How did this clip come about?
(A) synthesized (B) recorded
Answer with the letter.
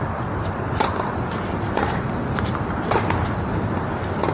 B